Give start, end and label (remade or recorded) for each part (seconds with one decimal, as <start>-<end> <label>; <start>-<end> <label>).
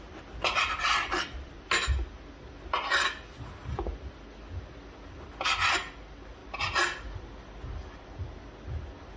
0.0-9.2 recorded